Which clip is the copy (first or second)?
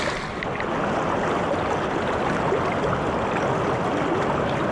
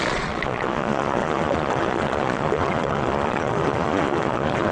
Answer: second